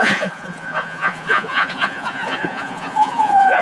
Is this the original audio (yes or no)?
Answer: no